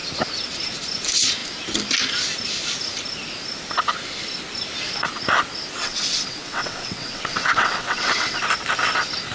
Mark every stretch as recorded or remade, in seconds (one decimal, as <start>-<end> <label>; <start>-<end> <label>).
0.0-5.8 recorded; 5.8-8.4 remade; 8.4-9.3 recorded

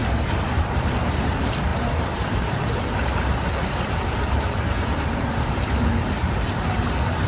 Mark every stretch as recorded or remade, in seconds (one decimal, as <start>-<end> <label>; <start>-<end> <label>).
0.0-7.3 remade

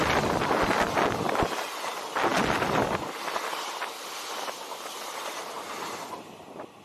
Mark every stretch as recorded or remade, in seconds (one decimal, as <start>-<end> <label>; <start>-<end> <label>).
0.0-6.8 recorded

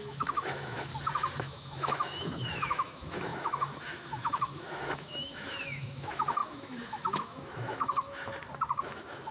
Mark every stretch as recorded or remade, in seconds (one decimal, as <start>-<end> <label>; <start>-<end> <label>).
0.0-0.9 remade; 0.9-1.4 recorded; 1.4-8.3 remade; 8.3-8.8 recorded; 8.8-9.3 remade

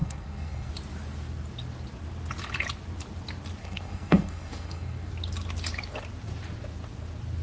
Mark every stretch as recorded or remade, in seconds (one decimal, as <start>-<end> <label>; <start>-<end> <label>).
0.0-0.7 remade; 0.7-3.6 recorded; 3.6-5.1 remade; 5.1-7.4 recorded